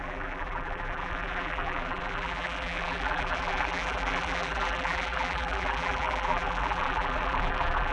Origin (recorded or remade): remade